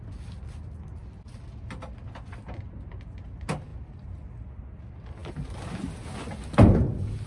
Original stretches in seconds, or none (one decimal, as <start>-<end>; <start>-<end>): 0.0-7.3